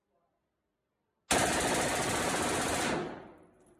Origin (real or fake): real